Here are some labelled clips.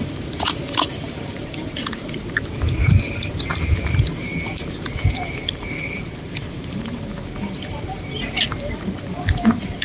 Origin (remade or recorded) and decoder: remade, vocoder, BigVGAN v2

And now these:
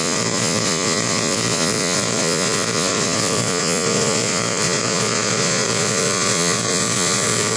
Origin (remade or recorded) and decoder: remade, vocoder, Vocos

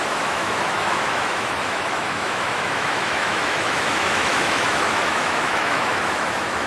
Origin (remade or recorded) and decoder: remade, autoencoder, DAC-VAE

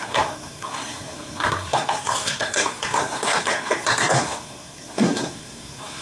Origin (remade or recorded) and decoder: remade, codec, SNAC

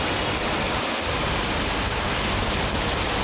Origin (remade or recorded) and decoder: recorded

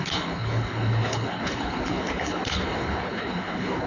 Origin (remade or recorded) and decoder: remade, codec, HILCodec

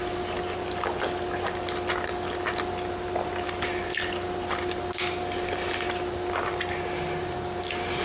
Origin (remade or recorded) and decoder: recorded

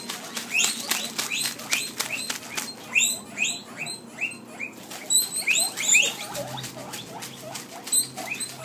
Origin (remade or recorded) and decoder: recorded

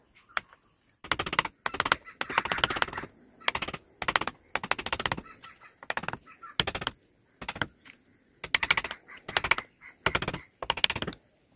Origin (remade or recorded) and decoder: recorded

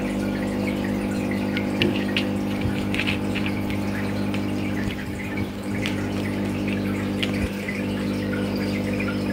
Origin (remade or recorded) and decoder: remade, vocoder, BigVGAN v2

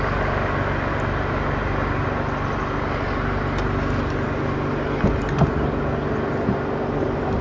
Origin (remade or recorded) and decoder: recorded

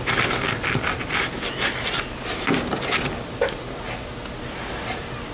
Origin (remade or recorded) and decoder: recorded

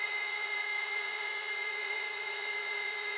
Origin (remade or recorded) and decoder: remade, vocoder, Vocos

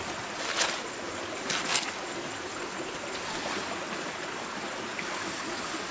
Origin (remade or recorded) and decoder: recorded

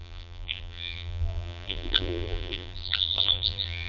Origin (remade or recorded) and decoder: remade, vocoder, BigVGAN v2